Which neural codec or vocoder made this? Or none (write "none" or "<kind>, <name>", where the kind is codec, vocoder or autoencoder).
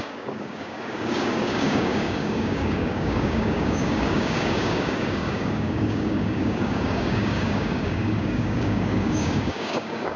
codec, DAC